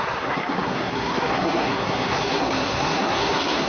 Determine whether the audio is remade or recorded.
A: remade